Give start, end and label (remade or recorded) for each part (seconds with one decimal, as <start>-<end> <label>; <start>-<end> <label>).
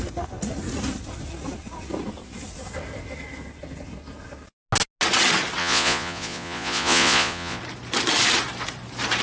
0.0-5.6 recorded; 5.6-7.6 remade; 7.6-9.2 recorded